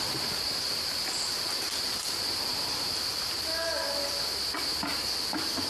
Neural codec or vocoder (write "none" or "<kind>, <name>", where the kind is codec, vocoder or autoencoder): none